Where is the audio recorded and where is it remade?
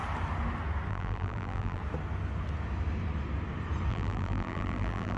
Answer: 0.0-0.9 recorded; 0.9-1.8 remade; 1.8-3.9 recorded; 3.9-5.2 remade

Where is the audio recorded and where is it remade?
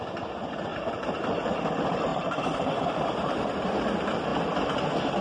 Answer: 0.0-0.7 recorded; 0.7-1.6 remade; 1.6-2.1 recorded; 2.1-2.9 remade; 2.9-5.2 recorded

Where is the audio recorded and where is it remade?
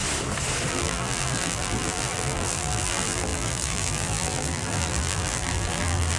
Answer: 0.0-0.7 recorded; 0.7-6.2 remade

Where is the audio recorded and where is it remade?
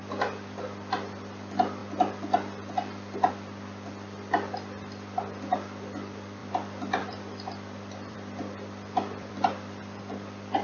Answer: 0.0-6.4 recorded; 6.4-10.0 remade; 10.0-10.6 recorded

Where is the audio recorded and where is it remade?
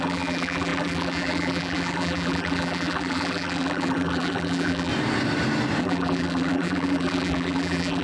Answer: 0.0-4.9 remade; 4.9-5.8 recorded; 5.8-8.0 remade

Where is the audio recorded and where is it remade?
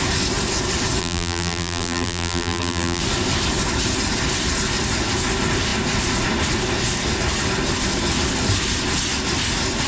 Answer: 0.0-1.0 recorded; 1.0-3.0 remade; 3.0-9.9 recorded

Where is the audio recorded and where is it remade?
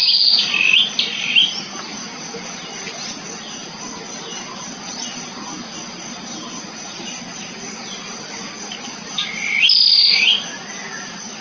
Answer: 0.0-9.6 remade; 9.6-10.9 recorded; 10.9-11.4 remade